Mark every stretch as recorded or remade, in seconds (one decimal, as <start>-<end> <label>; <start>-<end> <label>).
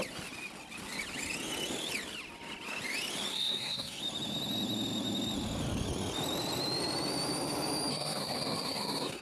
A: 0.0-3.3 recorded; 3.3-4.0 remade; 4.0-7.9 recorded; 7.9-9.2 remade